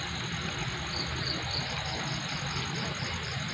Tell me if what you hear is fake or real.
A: real